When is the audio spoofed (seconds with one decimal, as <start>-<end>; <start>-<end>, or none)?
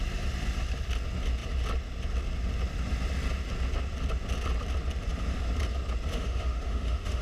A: 6.1-7.2